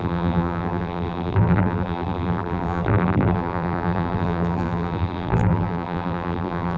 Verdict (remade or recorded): remade